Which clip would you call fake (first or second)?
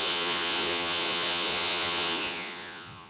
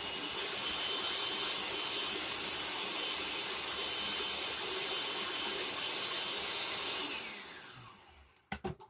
first